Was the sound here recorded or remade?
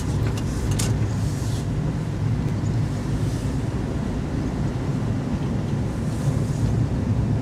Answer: recorded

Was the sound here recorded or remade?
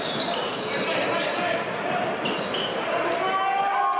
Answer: recorded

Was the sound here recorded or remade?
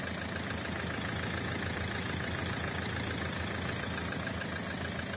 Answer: recorded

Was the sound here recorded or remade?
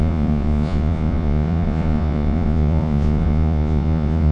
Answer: remade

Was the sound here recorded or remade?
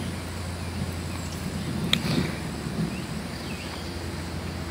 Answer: recorded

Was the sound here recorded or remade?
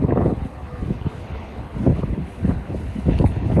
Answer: remade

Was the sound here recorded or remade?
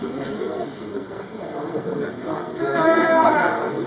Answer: remade